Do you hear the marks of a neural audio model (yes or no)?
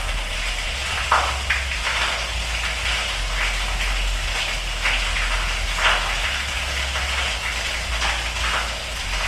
no